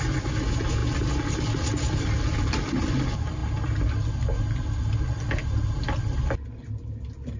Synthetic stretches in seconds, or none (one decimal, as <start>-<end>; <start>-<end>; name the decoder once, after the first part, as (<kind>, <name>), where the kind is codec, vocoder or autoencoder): 0.0-0.8 (vocoder, BigVGAN v2); 1.4-3.4